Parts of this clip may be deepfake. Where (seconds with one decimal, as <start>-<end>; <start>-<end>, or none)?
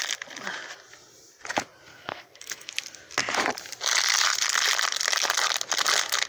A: 1.9-2.7